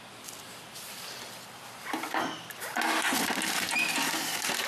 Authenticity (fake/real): real